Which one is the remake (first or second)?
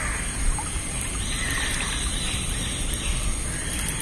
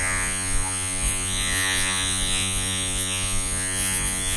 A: second